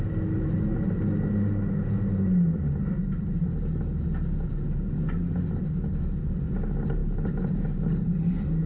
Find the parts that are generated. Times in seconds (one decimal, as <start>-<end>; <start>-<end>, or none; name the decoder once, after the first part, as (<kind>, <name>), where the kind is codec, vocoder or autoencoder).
none

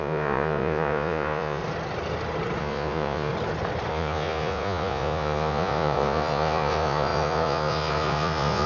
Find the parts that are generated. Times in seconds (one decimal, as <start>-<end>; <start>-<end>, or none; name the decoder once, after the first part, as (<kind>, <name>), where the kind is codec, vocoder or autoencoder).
0.0-1.6 (vocoder, Vocos); 2.6-3.3; 3.9-8.7

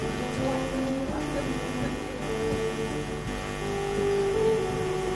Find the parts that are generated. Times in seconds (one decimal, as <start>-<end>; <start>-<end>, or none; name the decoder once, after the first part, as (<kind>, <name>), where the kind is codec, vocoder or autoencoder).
0.7-1.4 (vocoder, BigVGAN v2); 4.2-5.1